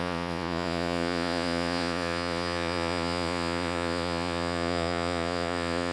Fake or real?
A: fake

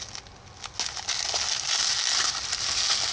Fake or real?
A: real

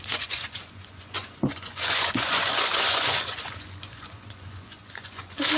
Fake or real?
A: fake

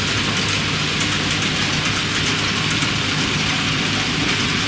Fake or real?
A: real